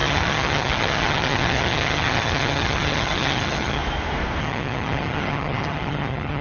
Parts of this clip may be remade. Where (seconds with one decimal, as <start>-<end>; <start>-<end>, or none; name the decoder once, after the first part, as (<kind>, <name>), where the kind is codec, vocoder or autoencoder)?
0.0-3.8 (vocoder, HiFi-GAN); 4.4-6.4